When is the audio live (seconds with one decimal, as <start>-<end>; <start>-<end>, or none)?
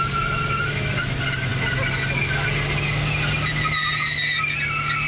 0.0-5.1